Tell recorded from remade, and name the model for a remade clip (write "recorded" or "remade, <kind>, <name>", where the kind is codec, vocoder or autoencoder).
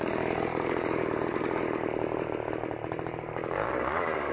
remade, vocoder, BigVGAN v2